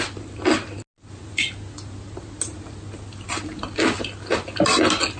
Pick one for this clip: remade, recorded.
recorded